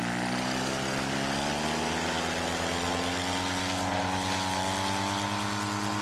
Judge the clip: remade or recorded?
recorded